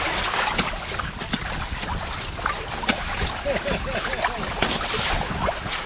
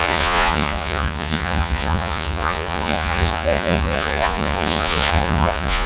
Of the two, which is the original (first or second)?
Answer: first